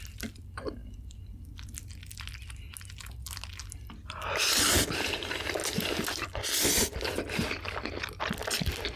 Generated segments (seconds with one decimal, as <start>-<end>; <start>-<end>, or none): none